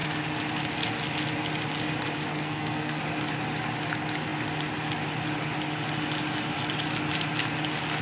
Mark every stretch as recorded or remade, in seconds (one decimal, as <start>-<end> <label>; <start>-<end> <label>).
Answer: 0.0-2.3 recorded; 2.3-3.0 remade; 3.0-8.0 recorded